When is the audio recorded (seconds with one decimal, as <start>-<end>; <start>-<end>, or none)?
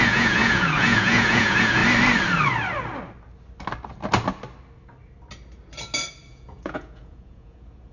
1.8-6.3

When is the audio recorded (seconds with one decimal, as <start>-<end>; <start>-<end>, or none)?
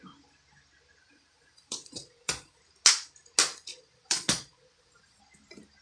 0.0-1.0; 2.6-3.7; 5.2-5.8